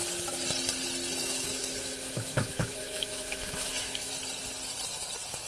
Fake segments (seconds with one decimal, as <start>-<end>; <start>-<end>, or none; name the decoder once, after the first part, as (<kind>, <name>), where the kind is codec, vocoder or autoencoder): 1.2-4.1 (autoencoder, DAC-VAE)